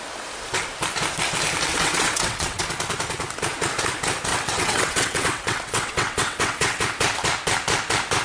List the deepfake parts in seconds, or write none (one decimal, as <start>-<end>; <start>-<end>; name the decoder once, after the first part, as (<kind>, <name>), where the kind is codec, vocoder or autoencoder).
1.7-2.6 (vocoder, WaveNeXt); 4.3-6.8